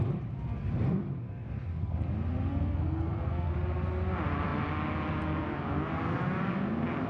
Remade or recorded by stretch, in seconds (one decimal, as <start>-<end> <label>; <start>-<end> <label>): 0.0-2.5 recorded; 2.5-3.5 remade; 3.5-7.1 recorded